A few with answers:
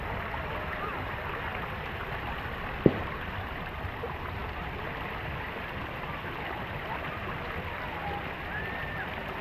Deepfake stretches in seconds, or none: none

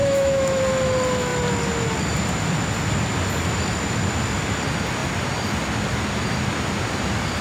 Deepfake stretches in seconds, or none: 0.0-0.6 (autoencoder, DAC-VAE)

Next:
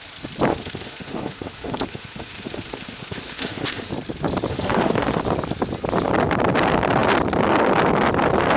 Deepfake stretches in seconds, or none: 0.5-3.9 (autoencoder, DAC-VAE); 4.5-5.2

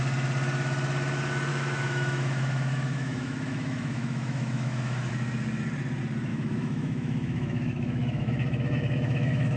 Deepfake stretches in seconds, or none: 1.5-5.1 (autoencoder, DAC-VAE); 6.3-9.6

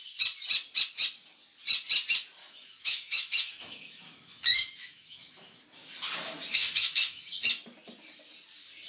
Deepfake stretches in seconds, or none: 2.4-5.6 (autoencoder, DAC-VAE); 6.5-7.2

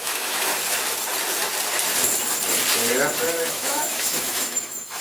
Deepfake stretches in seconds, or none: 0.0-0.5 (autoencoder, DAC-VAE); 3.5-5.0

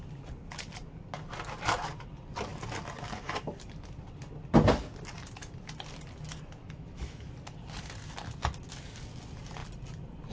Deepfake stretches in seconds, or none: 6.6-7.3 (autoencoder, DAC-VAE)